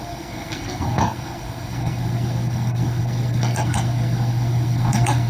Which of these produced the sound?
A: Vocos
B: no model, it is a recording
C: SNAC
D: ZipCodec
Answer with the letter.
C